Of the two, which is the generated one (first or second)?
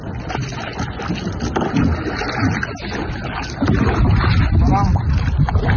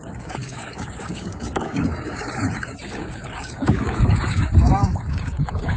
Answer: second